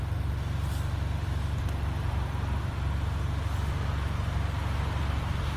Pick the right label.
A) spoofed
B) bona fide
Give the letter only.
B